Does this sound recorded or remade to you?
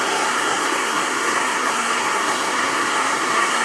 remade